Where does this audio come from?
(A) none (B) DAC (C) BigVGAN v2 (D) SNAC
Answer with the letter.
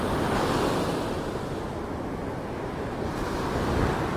A